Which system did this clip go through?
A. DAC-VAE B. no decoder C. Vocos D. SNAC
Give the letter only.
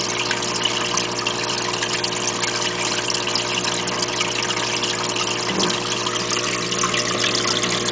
B